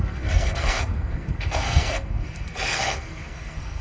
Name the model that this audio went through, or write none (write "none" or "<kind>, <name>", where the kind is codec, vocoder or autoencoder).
codec, SNAC